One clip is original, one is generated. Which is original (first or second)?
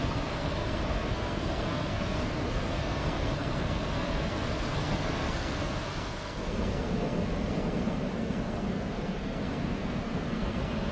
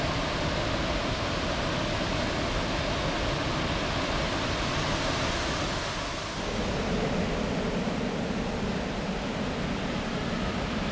second